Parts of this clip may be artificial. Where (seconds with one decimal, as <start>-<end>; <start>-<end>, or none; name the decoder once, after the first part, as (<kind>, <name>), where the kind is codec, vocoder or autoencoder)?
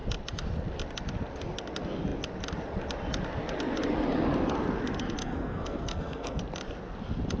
5.2-6.4 (codec, SNAC)